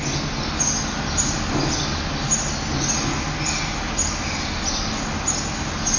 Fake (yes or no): no